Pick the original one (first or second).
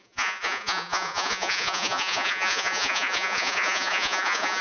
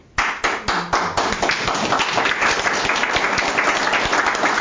second